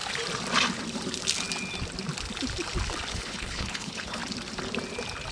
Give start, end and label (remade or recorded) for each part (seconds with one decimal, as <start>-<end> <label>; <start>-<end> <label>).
0.0-3.1 recorded; 3.1-4.2 remade; 4.2-5.3 recorded